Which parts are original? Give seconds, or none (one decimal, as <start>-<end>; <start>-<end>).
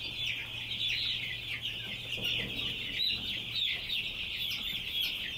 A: 0.0-5.4